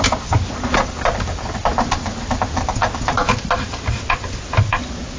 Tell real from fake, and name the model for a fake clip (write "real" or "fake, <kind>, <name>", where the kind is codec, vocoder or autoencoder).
real